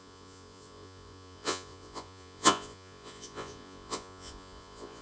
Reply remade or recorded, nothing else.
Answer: remade